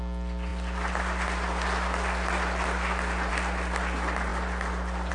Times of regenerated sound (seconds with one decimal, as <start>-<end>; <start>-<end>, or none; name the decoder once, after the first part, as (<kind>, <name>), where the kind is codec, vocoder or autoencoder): none